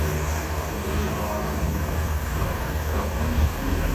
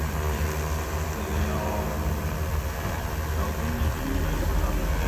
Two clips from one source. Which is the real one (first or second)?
second